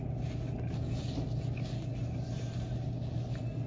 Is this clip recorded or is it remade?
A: recorded